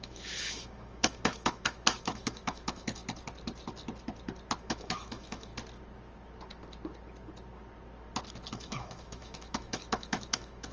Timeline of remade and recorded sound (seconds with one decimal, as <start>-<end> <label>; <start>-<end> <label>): 0.0-3.0 remade; 3.0-4.6 recorded; 4.6-5.5 remade; 5.5-8.5 recorded; 8.5-10.7 remade